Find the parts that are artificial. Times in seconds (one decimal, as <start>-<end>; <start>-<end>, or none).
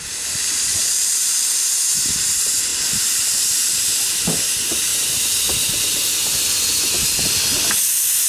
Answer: 0.7-2.0; 2.7-3.9